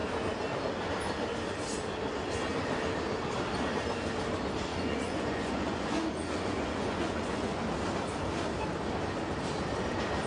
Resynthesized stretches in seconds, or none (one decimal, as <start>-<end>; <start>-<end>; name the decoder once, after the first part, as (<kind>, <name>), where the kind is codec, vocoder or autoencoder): 4.7-7.6 (vocoder, Vocos)